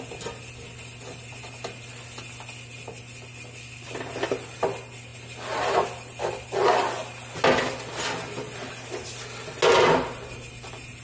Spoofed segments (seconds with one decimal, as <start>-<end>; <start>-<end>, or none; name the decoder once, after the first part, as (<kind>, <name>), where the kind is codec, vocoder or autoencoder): none